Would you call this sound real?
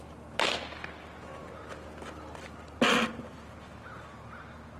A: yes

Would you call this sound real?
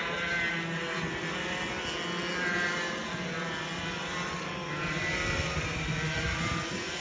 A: yes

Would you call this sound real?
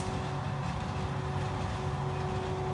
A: yes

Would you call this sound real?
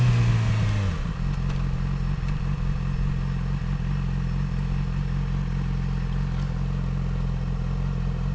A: yes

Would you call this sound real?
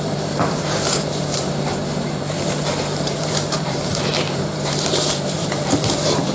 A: no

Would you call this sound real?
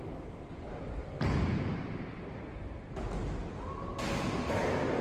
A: yes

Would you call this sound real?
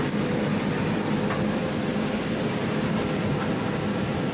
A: yes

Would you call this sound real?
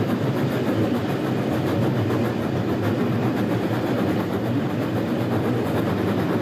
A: yes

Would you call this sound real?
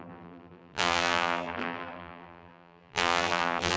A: no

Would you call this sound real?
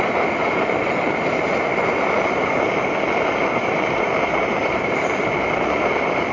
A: no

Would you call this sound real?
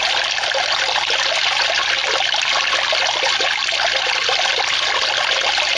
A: yes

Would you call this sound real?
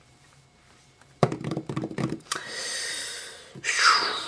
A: no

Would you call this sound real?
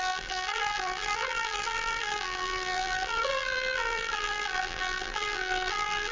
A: no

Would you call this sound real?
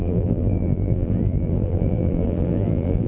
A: no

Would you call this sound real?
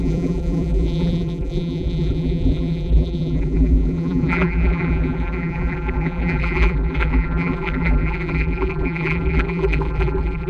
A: no